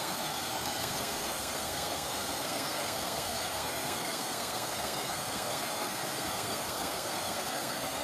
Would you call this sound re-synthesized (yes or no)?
yes